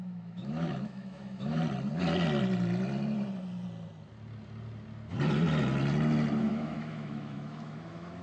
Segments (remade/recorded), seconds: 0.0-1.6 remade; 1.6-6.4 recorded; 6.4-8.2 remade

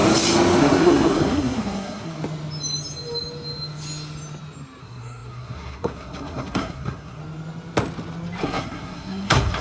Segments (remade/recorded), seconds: 0.0-0.6 recorded; 0.6-2.2 remade; 2.2-4.8 recorded; 4.8-7.2 remade; 7.2-8.4 recorded; 8.4-9.6 remade

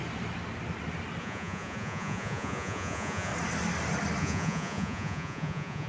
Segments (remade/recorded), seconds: 0.0-1.2 recorded; 1.2-3.3 remade; 3.3-4.2 recorded; 4.2-5.9 remade

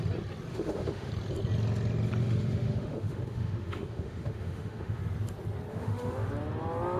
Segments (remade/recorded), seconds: 0.0-0.5 recorded; 0.5-1.1 remade; 1.1-2.2 recorded; 2.2-5.0 remade; 5.0-5.7 recorded; 5.7-6.3 remade; 6.3-7.0 recorded

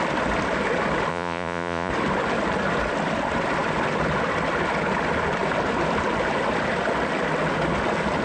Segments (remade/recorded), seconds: 0.0-1.1 recorded; 1.1-1.9 remade; 1.9-8.2 recorded

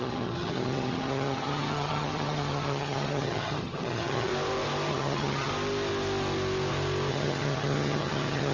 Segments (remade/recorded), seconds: 0.0-4.3 remade; 4.3-4.9 recorded; 4.9-5.5 remade; 5.5-7.1 recorded; 7.1-8.5 remade

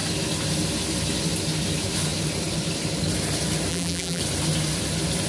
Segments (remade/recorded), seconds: 0.0-3.7 recorded; 3.7-4.2 remade; 4.2-5.3 recorded

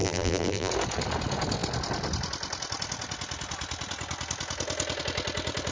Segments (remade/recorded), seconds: 0.0-0.7 remade; 0.7-5.7 recorded